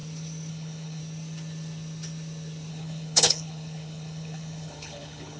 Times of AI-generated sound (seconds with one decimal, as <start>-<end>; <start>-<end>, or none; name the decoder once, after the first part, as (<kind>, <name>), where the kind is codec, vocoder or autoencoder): 0.5-1.0 (codec, HILCodec); 2.7-5.4

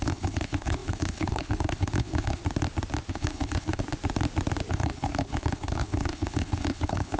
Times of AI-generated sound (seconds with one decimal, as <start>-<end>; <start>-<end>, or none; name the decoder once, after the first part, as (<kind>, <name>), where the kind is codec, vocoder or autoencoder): 0.0-2.4 (codec, HILCodec); 3.1-3.8; 4.7-7.2

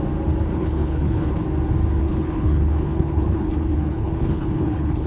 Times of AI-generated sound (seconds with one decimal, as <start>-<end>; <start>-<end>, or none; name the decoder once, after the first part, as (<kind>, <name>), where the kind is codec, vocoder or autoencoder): 0.5-1.4 (codec, HILCodec); 2.0-5.1